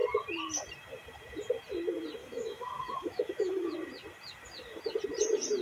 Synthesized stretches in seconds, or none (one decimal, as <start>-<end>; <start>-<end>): 2.2-3.7